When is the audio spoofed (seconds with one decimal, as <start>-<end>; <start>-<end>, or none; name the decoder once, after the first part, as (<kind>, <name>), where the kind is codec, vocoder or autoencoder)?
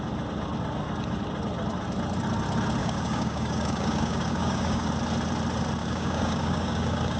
2.8-4.9 (codec, DAC); 5.8-7.2